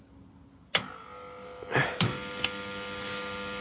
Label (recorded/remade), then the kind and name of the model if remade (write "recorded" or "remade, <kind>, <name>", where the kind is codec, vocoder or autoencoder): recorded